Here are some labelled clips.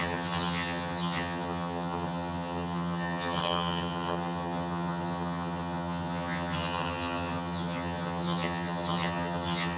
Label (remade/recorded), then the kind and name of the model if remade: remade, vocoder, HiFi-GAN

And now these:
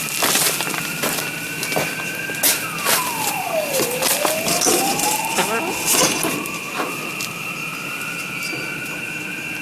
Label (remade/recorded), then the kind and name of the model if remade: recorded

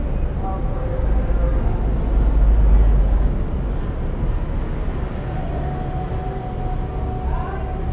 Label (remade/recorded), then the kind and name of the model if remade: recorded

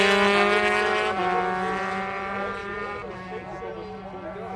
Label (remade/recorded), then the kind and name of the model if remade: recorded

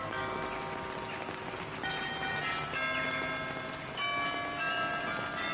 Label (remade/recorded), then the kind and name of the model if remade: recorded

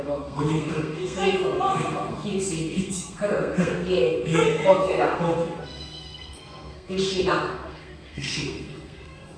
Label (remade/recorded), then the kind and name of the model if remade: remade, codec, SNAC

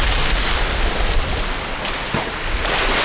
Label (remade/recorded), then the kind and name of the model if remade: recorded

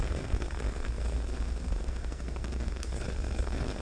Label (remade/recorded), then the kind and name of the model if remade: remade, codec, SNAC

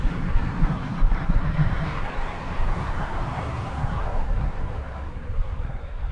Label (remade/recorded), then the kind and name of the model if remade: remade, codec, SNAC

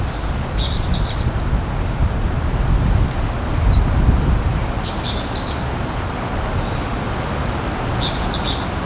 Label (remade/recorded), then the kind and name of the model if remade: recorded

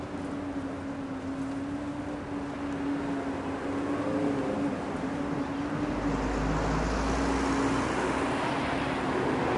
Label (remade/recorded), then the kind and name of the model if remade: recorded